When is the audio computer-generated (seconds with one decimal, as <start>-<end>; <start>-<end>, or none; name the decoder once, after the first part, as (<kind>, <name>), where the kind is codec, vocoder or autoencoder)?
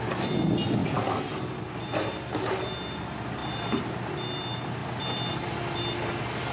3.4-4.1 (vocoder, BigVGAN v2)